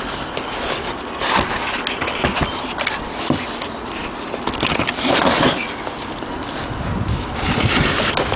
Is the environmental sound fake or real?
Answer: real